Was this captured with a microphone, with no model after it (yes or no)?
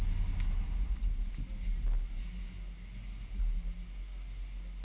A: yes